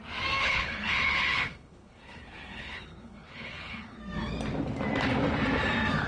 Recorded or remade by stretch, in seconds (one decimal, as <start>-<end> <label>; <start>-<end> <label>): 0.0-0.4 recorded; 0.4-4.0 remade; 4.0-6.1 recorded